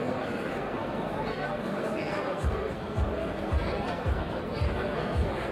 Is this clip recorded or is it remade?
remade